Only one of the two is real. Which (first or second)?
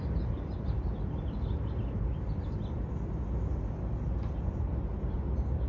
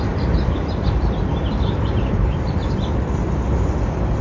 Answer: first